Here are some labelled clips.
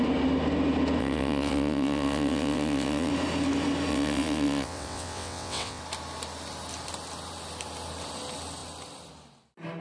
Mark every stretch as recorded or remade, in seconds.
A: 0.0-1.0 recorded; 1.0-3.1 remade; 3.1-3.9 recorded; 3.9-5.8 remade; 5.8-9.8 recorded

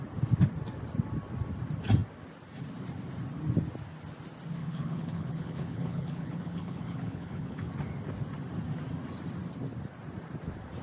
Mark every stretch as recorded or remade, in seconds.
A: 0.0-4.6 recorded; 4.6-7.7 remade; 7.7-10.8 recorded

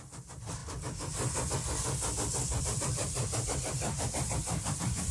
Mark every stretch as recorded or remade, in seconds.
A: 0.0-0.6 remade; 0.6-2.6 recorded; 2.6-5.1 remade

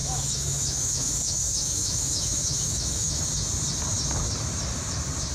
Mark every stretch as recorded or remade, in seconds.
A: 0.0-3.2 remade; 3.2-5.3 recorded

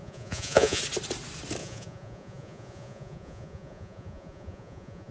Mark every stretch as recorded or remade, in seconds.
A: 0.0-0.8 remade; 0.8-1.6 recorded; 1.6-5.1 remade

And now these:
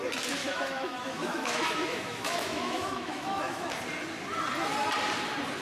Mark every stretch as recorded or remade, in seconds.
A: 0.0-0.4 recorded; 0.4-3.8 remade; 3.8-5.6 recorded